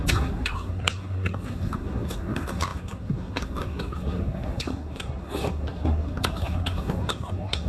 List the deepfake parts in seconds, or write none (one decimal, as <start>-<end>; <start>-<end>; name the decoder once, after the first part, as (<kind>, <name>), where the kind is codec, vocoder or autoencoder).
0.0-7.7 (codec, SNAC)